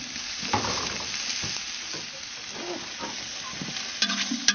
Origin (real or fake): real